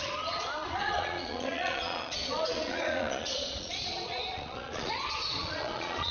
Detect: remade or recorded remade